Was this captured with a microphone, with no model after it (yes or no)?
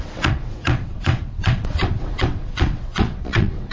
no